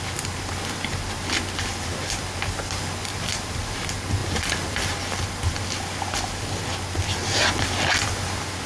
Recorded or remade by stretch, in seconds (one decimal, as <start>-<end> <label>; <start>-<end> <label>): 0.0-3.0 recorded; 3.0-3.8 remade; 3.8-4.2 recorded; 4.2-4.9 remade; 4.9-8.7 recorded